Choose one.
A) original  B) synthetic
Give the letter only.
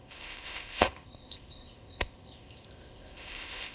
B